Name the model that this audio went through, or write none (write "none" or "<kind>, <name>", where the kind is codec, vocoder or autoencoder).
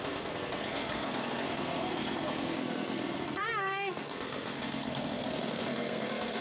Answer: codec, SNAC